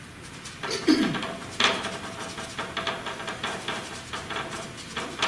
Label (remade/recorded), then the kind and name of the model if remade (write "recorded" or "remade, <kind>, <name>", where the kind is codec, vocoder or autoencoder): recorded